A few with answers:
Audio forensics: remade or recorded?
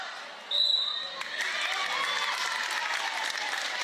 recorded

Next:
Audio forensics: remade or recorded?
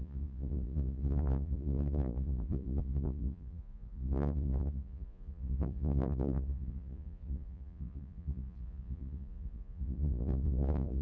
remade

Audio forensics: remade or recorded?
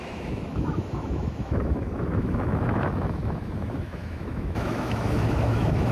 remade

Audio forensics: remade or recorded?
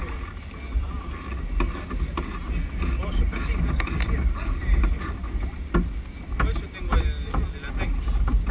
recorded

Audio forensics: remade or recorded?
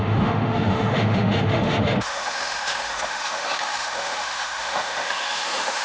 remade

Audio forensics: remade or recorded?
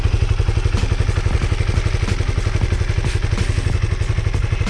recorded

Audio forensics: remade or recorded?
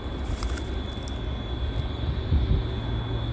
recorded